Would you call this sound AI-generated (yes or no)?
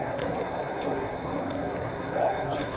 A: yes